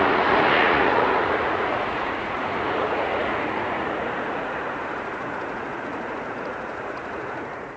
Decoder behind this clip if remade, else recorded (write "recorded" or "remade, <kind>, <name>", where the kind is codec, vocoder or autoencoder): remade, vocoder, Vocos